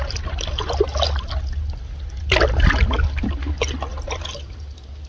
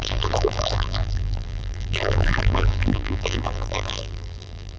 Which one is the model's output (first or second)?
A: second